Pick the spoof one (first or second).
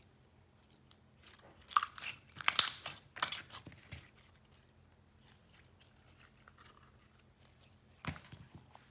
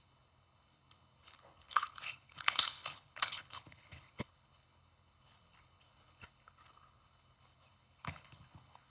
second